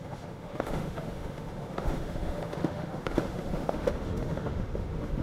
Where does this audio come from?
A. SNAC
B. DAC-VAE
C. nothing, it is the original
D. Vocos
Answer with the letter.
B